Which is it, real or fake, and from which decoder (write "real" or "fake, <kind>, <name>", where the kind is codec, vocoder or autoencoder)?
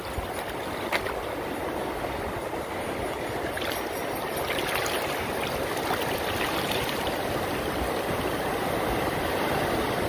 real